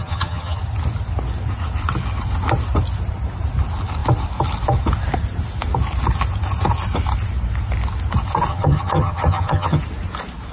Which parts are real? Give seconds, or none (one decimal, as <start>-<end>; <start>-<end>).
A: 0.6-8.5; 9.8-10.5